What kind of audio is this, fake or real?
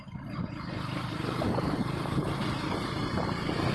fake